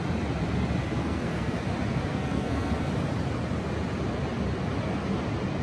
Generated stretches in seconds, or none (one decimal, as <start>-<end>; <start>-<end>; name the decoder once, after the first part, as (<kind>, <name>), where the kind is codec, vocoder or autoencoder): 0.8-1.6 (codec, SNAC); 2.1-2.9